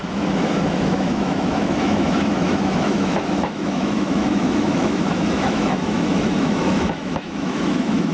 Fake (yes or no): yes